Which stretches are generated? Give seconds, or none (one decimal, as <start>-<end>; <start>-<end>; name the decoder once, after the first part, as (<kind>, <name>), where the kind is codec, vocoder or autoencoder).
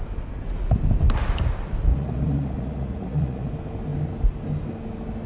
1.9-3.5 (vocoder, Vocos)